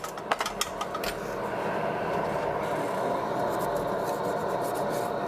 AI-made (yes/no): no